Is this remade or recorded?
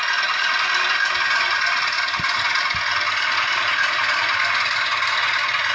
recorded